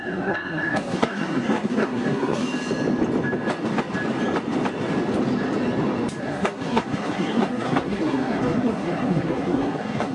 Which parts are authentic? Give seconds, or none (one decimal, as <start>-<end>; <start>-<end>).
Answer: 2.4-6.2